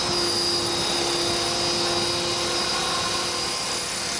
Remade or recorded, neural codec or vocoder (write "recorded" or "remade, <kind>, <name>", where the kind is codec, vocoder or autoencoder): recorded